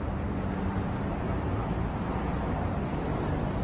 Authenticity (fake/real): real